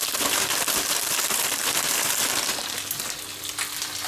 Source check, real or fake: real